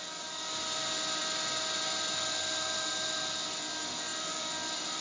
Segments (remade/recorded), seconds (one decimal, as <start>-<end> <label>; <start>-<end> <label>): 0.0-5.0 recorded